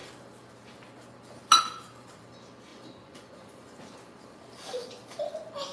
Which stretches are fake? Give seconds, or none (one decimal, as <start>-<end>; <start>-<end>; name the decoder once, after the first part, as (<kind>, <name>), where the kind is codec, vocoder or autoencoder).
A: 2.7-3.8 (vocoder, Vocos)